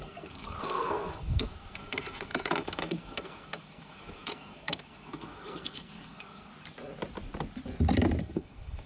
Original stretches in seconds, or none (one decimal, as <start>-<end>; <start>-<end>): 6.5-8.2